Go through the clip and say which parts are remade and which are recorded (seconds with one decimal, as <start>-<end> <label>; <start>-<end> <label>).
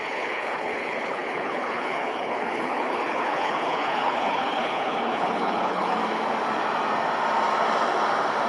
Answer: 0.0-6.0 remade; 6.0-8.5 recorded